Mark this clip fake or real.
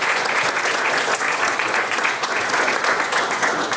fake